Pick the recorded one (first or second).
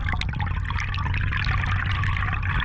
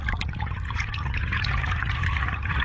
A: first